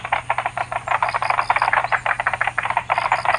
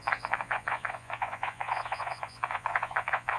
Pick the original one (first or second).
first